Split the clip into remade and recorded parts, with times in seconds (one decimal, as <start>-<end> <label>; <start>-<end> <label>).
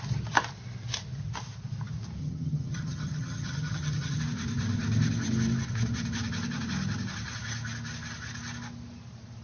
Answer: 0.0-2.2 recorded; 2.2-4.2 remade; 4.2-9.4 recorded